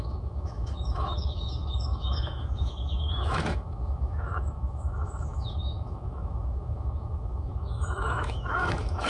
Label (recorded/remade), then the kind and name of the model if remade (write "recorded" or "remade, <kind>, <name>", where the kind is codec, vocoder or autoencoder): remade, autoencoder, DAC-VAE